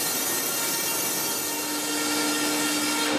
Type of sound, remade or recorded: recorded